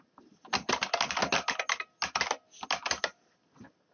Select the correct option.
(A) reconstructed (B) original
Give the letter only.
B